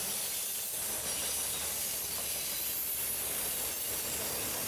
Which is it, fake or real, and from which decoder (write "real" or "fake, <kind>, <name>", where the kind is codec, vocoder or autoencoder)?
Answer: real